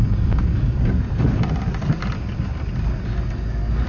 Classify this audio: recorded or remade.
recorded